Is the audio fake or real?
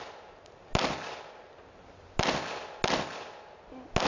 real